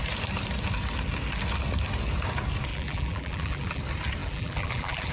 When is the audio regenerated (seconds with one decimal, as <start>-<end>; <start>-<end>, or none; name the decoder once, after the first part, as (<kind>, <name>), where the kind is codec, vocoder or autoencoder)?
2.7-3.8 (vocoder, BigVGAN v2); 4.2-5.1

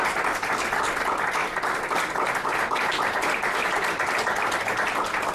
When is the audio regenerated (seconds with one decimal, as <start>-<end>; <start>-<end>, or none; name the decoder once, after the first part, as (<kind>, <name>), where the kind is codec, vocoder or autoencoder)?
3.6-4.6 (vocoder, BigVGAN v2)

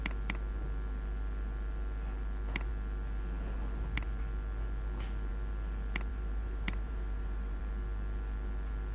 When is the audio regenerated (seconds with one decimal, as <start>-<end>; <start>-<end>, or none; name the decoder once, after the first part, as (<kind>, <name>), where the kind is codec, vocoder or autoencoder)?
6.1-7.6 (vocoder, BigVGAN v2)

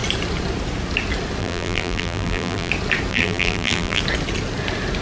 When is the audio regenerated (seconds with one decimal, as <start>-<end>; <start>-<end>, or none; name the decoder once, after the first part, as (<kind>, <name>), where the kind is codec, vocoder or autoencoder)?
1.4-2.7 (vocoder, BigVGAN v2); 3.1-4.0